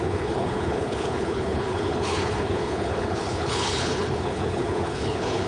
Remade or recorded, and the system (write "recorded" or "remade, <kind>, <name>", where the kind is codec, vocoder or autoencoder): remade, codec, HILCodec